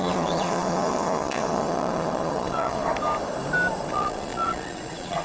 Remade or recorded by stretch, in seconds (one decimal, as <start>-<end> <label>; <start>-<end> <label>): 0.0-2.8 remade; 2.8-3.9 recorded; 3.9-5.2 remade